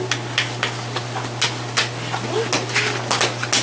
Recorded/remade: recorded